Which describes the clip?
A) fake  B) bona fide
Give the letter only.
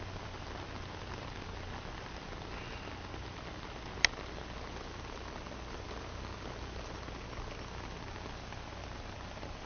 B